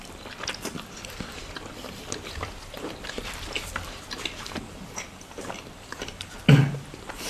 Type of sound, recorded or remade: remade